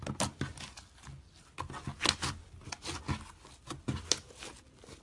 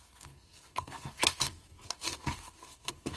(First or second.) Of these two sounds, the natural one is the first